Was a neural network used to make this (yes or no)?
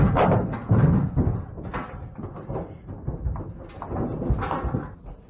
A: no